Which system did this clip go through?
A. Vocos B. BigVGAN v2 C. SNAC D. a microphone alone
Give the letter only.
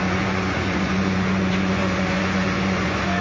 A